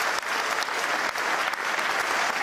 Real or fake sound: real